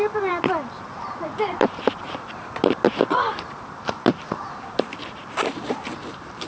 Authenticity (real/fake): fake